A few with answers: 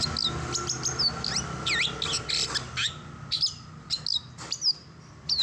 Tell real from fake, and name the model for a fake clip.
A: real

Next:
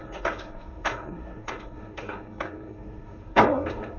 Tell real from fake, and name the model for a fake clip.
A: fake, codec, SNAC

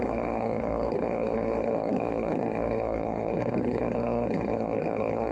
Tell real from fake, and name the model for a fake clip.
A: fake, codec, SNAC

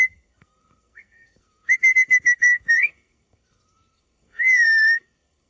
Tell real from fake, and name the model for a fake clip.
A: fake, codec, SNAC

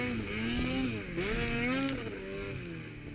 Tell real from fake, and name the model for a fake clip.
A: real